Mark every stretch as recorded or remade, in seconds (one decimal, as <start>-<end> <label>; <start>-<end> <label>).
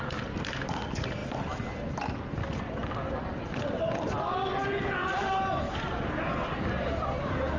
0.0-7.6 recorded